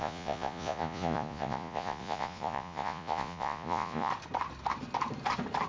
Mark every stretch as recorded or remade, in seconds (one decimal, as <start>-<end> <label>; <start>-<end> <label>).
0.0-4.1 remade; 4.1-5.7 recorded